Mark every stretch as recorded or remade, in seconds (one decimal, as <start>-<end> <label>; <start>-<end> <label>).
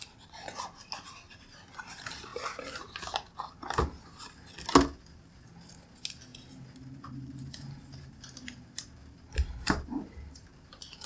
0.0-6.3 recorded; 6.3-11.1 remade